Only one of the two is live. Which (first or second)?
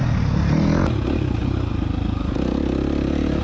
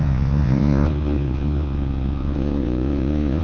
first